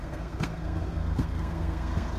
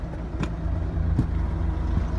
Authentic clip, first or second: second